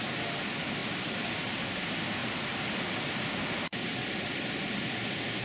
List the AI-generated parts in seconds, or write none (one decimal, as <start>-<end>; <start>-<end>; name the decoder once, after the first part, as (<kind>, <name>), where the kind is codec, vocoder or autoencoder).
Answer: 0.0-2.2 (vocoder, BigVGAN v2); 3.0-5.4